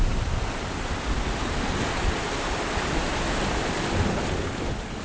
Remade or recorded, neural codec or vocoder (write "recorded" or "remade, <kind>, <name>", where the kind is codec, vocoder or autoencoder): recorded